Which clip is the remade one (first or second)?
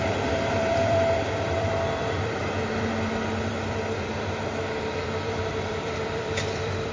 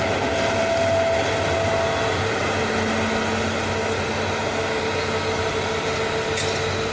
first